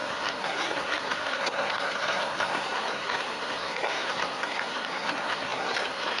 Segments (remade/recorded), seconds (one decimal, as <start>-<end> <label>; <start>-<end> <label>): 0.0-6.2 remade